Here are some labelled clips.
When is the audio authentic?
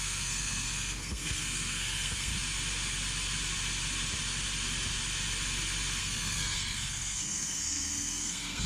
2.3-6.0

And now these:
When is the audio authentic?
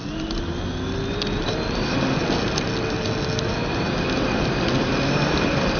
0.0-5.8